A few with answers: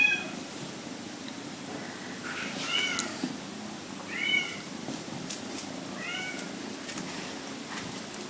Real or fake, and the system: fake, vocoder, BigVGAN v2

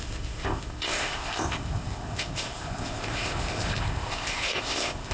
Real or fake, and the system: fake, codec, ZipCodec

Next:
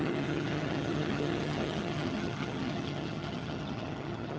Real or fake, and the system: fake, vocoder, HiFi-GAN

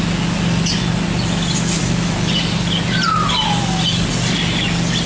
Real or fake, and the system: real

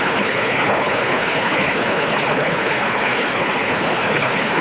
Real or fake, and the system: fake, codec, HILCodec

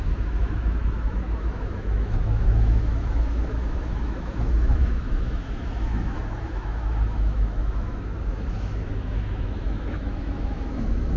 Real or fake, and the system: fake, autoencoder, DAC-VAE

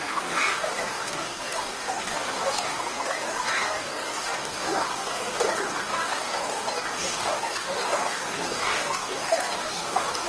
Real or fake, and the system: fake, codec, DAC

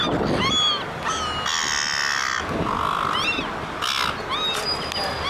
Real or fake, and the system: real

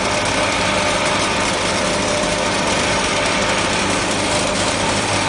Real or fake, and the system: fake, vocoder, BigVGAN v2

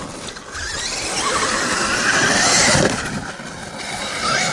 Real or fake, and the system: real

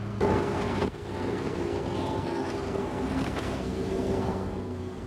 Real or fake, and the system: fake, codec, SNAC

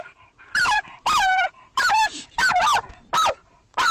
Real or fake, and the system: fake, vocoder, BigVGAN v2